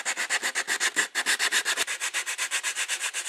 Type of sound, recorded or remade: recorded